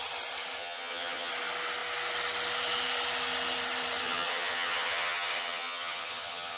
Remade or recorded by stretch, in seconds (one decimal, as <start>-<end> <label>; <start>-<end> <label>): 0.0-0.6 recorded; 0.6-1.3 remade; 1.3-4.0 recorded; 4.0-6.6 remade